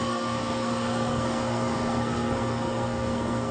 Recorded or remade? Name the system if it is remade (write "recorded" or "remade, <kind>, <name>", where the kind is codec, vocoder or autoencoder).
remade, codec, SNAC